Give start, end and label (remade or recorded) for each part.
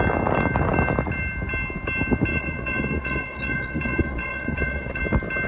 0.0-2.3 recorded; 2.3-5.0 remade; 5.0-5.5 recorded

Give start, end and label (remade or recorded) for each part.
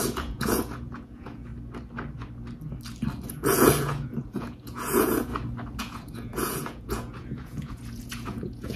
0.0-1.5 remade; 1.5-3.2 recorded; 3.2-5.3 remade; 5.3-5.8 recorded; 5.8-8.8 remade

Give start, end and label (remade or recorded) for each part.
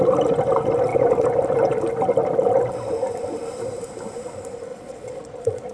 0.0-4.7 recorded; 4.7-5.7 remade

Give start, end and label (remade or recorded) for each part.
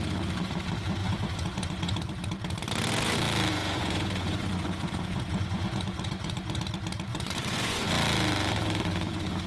0.0-1.0 recorded; 1.0-2.2 remade; 2.2-3.5 recorded; 3.5-6.6 remade; 6.6-7.1 recorded; 7.1-7.9 remade; 7.9-9.5 recorded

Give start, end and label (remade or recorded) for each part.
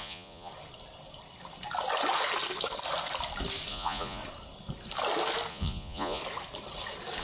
0.0-0.5 remade; 0.5-3.7 recorded; 3.7-4.2 remade; 4.2-5.5 recorded; 5.5-6.2 remade; 6.2-7.2 recorded